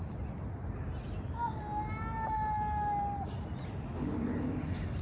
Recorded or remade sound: recorded